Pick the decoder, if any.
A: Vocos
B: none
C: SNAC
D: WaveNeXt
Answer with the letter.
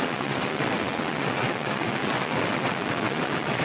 D